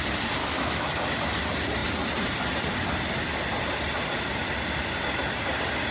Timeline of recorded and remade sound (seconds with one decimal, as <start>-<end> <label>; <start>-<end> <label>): 0.0-0.4 recorded; 0.4-0.9 remade; 0.9-5.9 recorded